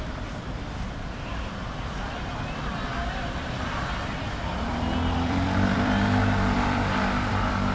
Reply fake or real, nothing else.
fake